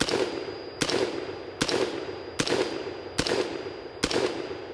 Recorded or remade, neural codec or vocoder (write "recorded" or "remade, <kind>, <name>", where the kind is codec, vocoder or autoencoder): recorded